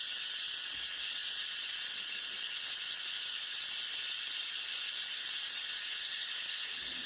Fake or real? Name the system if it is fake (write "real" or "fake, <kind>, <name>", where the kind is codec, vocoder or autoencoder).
real